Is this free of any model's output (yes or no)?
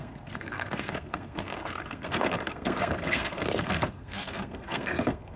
no